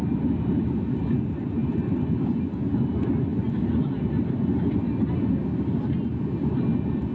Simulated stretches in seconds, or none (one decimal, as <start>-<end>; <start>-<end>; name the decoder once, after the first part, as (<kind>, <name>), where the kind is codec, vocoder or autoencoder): none